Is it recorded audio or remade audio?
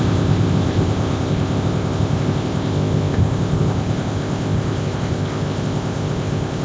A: remade